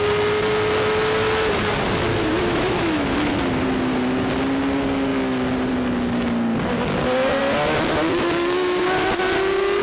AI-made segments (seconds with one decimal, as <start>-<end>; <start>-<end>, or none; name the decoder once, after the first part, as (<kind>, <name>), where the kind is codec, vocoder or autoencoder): 2.1-3.4 (autoencoder, DAC-VAE)